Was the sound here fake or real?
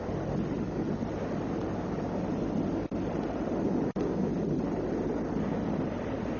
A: real